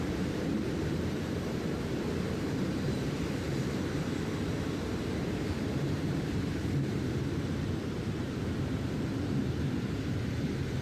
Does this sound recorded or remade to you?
remade